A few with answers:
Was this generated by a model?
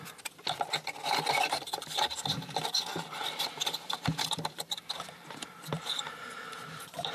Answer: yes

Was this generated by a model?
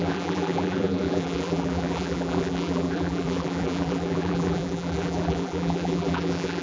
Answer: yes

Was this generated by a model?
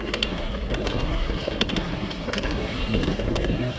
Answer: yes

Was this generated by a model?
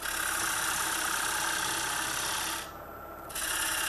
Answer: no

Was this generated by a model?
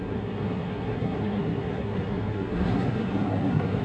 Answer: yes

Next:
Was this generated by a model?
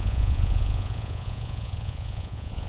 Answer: yes